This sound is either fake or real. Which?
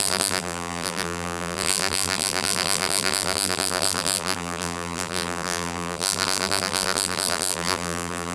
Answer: fake